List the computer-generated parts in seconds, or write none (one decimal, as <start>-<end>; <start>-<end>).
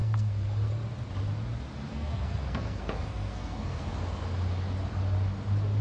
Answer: 0.0-0.7; 1.9-3.9